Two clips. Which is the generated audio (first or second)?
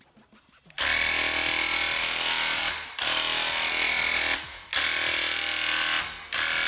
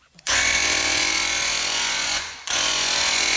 second